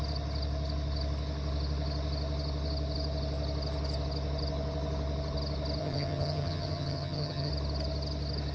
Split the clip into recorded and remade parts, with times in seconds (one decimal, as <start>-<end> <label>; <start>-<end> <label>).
0.0-5.8 recorded; 5.8-7.5 remade; 7.5-8.5 recorded